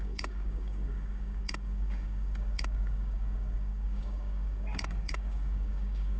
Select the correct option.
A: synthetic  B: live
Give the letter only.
A